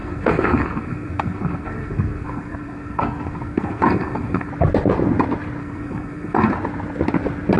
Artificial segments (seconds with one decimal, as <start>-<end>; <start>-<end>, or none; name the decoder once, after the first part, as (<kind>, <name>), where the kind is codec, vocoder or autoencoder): 0.0-4.5 (codec, SNAC); 5.6-6.5

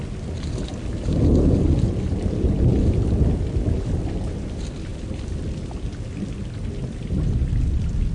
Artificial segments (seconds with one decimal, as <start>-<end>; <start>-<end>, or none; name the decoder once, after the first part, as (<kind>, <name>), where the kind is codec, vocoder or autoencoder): none